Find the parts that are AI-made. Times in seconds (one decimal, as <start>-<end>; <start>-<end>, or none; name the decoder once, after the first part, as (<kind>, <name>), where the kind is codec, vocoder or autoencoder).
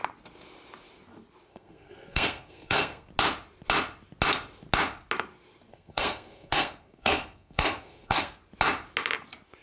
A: 1.5-3.1 (codec, SNAC); 5.7-8.4